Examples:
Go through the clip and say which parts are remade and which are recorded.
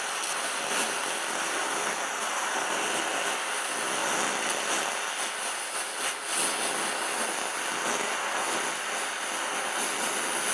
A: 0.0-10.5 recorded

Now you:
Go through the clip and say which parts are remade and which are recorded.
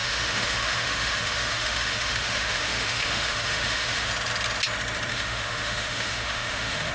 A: 0.0-4.1 remade; 4.1-5.1 recorded; 5.1-6.9 remade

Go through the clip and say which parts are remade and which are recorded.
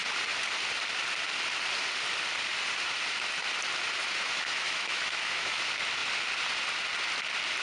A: 0.0-4.0 recorded; 4.0-5.6 remade; 5.6-7.6 recorded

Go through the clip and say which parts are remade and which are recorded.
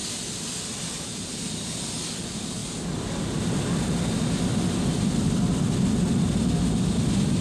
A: 0.0-7.4 recorded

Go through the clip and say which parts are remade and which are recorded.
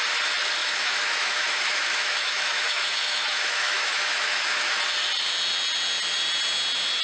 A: 0.0-0.6 recorded; 0.6-4.8 remade; 4.8-7.0 recorded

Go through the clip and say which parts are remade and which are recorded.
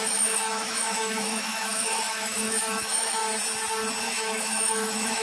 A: 0.0-3.2 remade; 3.2-4.0 recorded; 4.0-5.2 remade